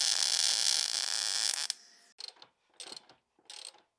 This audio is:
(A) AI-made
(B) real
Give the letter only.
B